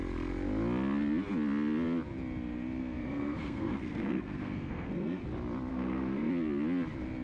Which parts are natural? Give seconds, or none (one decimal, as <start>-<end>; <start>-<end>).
0.0-2.8; 5.2-5.7; 6.3-7.2